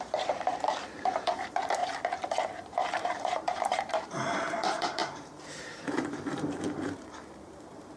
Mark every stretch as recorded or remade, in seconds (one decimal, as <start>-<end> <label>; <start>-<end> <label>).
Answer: 0.0-8.0 remade